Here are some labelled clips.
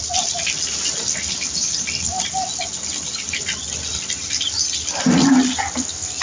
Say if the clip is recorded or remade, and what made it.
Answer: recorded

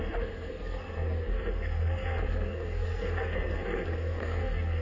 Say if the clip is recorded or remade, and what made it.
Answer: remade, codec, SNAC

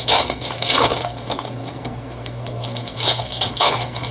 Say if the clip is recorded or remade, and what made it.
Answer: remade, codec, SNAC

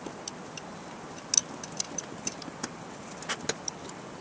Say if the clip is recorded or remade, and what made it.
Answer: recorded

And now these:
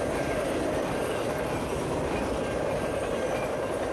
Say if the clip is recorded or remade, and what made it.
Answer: recorded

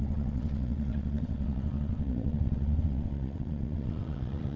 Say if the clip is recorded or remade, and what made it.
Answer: remade, vocoder, WaveNeXt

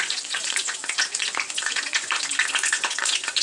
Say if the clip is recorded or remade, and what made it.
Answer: remade, vocoder, Vocos